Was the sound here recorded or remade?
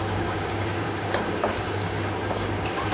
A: remade